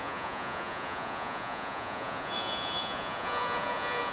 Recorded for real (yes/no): no